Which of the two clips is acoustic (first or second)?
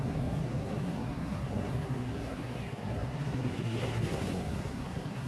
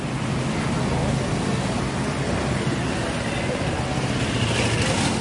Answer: second